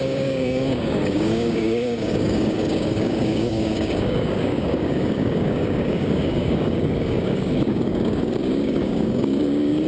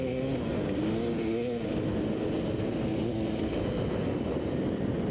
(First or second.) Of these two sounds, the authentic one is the second